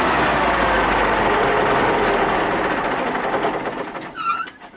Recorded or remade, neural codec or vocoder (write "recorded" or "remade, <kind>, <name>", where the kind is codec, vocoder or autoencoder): recorded